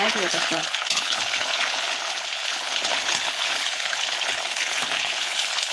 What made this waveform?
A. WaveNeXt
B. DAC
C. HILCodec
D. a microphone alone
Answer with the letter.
C